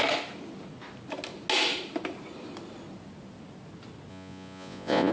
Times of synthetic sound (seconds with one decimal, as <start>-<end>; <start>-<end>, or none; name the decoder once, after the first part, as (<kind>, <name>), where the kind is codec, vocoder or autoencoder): 4.1-5.1 (vocoder, Vocos)